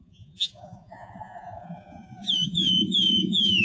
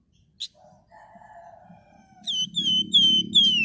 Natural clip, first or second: second